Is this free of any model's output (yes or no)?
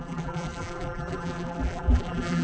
no